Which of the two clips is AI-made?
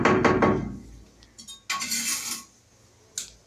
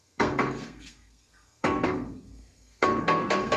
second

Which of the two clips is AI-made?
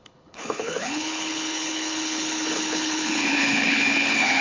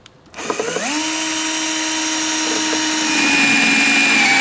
first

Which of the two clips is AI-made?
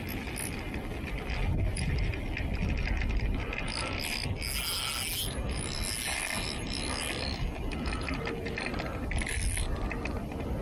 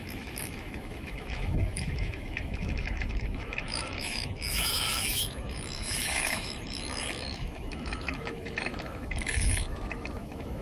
second